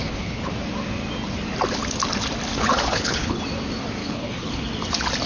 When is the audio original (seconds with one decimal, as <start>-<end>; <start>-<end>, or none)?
0.5-2.5; 3.4-4.0; 4.6-5.3